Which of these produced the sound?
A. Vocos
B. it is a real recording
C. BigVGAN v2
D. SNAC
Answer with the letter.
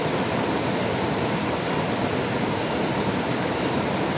B